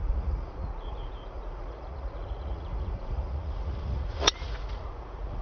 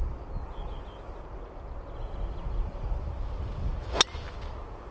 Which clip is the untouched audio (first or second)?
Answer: second